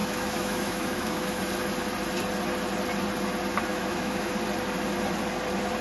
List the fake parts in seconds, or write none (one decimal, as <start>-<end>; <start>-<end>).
0.0-1.4; 3.7-4.3